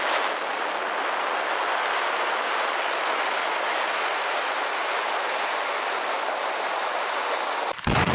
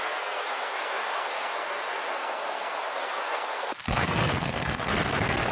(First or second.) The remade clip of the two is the second